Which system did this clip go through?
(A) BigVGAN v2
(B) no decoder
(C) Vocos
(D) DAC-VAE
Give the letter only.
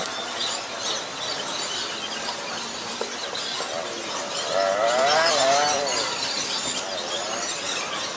B